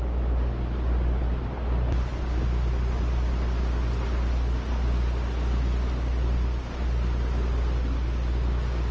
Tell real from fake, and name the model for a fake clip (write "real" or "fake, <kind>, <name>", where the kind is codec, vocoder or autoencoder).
real